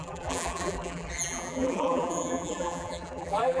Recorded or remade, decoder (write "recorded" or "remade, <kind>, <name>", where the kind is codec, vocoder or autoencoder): remade, vocoder, BigVGAN v2